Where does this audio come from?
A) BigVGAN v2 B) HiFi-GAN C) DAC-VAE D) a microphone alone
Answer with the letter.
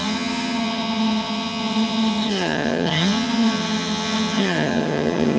B